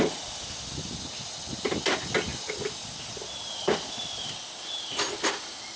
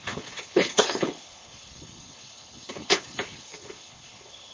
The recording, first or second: first